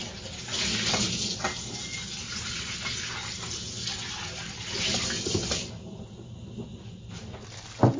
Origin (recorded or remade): recorded